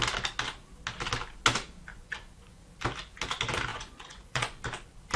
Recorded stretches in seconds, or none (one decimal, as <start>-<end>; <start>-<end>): 0.0-1.9; 2.6-3.7; 4.6-5.2

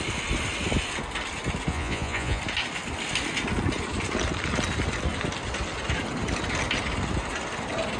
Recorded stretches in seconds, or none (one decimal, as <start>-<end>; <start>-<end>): 0.0-1.7; 2.4-8.0

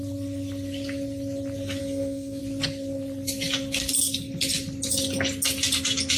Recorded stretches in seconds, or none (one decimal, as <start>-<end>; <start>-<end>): 0.0-1.8; 2.4-6.2

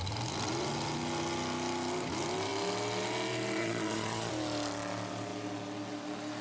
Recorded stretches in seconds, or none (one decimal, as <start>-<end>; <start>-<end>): 0.0-3.6; 4.3-6.4

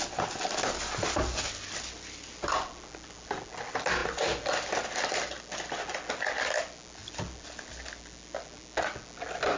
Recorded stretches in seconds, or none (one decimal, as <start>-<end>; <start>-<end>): 0.0-9.6

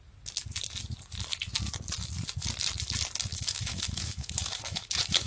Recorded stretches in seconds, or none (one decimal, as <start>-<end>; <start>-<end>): 0.0-3.3

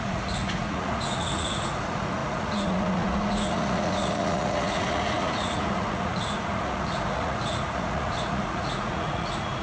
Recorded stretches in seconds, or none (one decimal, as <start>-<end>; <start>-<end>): none

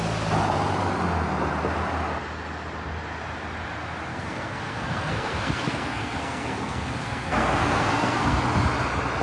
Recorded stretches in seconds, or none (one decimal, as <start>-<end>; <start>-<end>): 0.0-4.1; 8.4-9.2